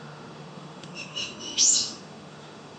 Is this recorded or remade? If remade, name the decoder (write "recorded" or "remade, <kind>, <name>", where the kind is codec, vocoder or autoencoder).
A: remade, autoencoder, DAC-VAE